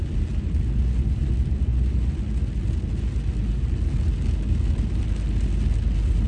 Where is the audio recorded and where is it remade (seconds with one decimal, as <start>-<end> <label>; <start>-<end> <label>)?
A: 0.0-6.3 recorded